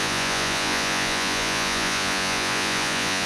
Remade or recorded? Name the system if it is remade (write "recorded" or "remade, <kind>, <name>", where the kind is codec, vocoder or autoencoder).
remade, vocoder, Vocos